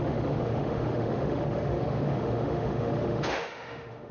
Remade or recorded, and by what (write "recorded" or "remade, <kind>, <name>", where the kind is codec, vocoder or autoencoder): remade, autoencoder, DAC-VAE